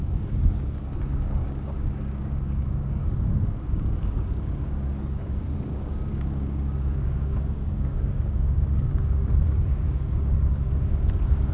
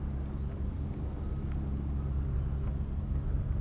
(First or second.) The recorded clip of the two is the second